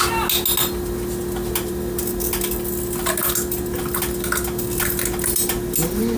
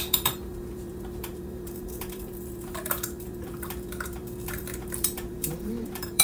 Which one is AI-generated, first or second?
second